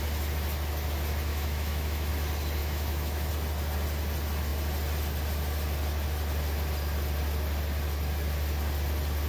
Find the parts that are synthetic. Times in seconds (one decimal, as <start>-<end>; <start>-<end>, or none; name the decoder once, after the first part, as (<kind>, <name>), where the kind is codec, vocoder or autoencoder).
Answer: 1.3-2.1 (autoencoder, DAC-VAE); 2.6-3.3